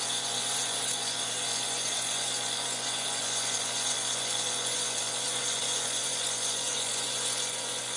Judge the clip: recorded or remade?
remade